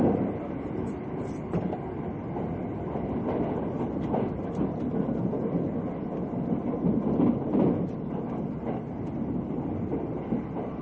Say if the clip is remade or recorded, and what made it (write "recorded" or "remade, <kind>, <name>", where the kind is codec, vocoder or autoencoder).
recorded